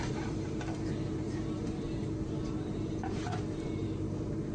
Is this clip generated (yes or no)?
yes